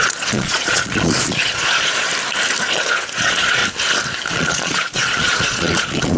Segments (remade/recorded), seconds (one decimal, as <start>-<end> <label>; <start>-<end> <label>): 0.0-2.1 remade; 2.1-2.6 recorded; 2.6-3.6 remade; 3.6-4.3 recorded; 4.3-6.2 remade